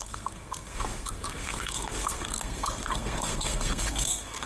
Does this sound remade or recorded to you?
remade